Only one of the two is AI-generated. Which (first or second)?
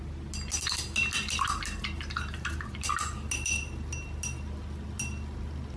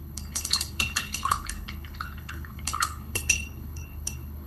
second